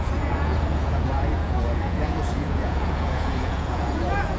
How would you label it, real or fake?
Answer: fake